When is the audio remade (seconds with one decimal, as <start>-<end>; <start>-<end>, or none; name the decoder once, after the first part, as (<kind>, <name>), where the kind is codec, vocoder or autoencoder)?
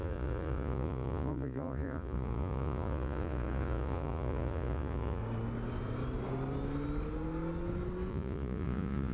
0.0-5.2 (vocoder, Vocos); 8.1-9.1